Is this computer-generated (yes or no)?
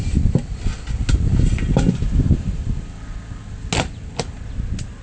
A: no